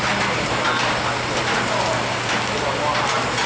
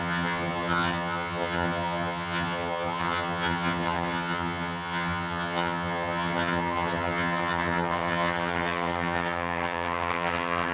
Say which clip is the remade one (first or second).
second